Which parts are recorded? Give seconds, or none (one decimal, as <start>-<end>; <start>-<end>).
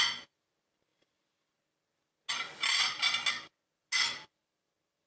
0.0-5.1